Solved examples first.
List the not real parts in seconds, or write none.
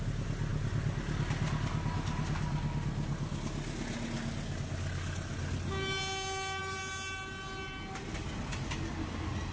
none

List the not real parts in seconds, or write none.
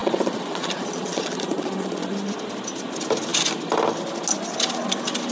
0.0-2.1 (vocoder, Vocos)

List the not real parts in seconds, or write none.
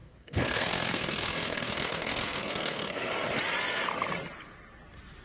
0.0-3.1 (codec, SNAC)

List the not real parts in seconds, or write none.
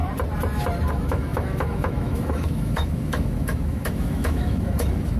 0.9-5.2 (autoencoder, DAC-VAE)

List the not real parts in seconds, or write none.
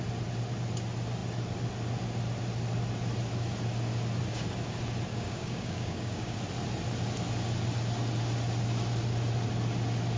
5.1-6.4 (codec, DAC)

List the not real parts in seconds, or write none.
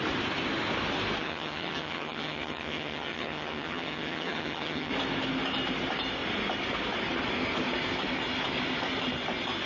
1.2-4.9 (vocoder, HiFi-GAN)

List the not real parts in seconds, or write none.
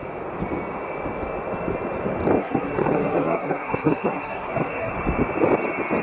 2.4-4.9 (codec, SNAC)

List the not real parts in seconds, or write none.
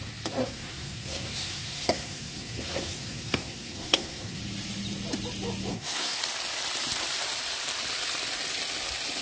0.4-4.4 (codec, SNAC); 5.7-6.2